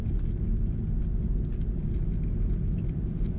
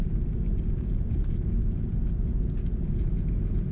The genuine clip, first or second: first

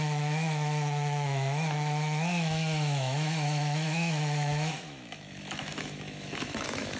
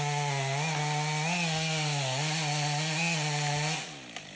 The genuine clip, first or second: second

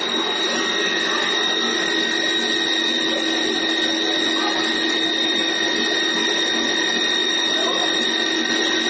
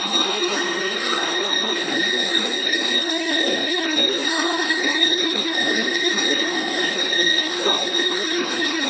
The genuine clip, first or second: first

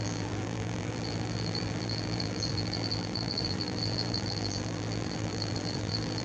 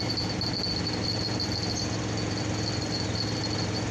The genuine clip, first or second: second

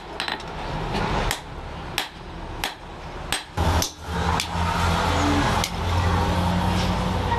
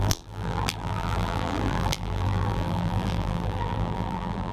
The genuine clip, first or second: first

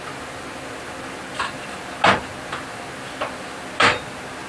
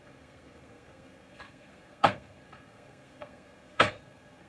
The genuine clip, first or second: first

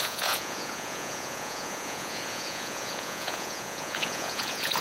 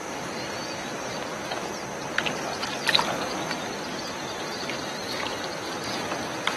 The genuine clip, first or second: second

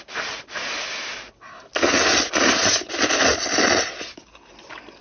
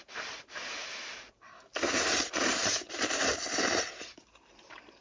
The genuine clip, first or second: first